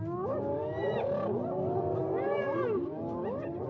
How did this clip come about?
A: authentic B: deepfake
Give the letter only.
A